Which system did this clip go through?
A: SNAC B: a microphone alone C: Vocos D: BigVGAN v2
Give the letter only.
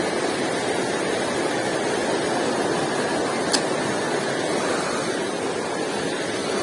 B